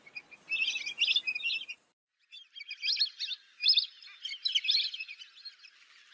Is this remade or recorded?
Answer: recorded